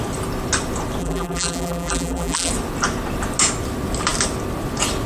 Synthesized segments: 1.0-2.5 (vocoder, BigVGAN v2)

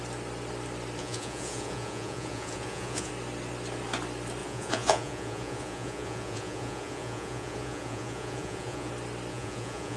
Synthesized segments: 1.0-3.1 (vocoder, Vocos); 4.4-8.9; 9.3-10.0